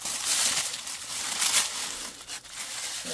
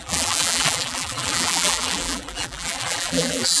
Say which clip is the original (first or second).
first